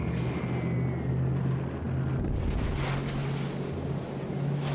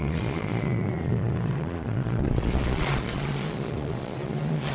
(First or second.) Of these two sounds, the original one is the first